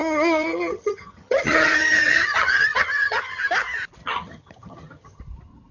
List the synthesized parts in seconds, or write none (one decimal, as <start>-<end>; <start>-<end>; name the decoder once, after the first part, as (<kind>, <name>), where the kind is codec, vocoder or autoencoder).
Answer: 0.0-3.4 (vocoder, HiFi-GAN); 4.0-5.2